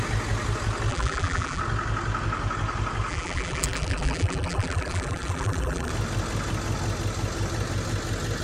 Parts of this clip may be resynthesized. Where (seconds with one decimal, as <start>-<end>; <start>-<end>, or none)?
0.9-1.6; 3.1-5.9